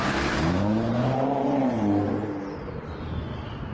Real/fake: real